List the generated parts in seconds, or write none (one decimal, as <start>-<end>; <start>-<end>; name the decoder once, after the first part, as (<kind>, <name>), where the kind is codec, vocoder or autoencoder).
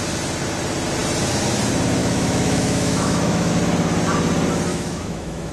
2.0-3.5 (autoencoder, DAC-VAE); 4.7-5.5